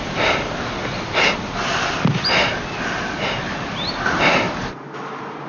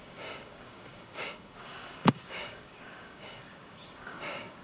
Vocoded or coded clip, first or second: second